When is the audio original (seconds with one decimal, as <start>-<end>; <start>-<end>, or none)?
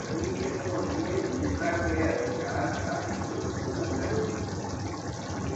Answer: 0.0-1.4; 4.1-5.6